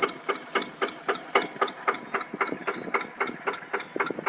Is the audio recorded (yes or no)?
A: yes